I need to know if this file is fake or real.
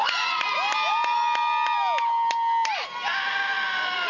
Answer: real